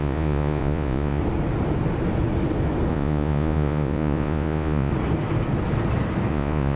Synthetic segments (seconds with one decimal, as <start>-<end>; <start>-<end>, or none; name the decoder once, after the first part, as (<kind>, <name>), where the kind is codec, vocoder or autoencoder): 0.0-1.2 (vocoder, Vocos); 2.9-4.9; 6.3-6.8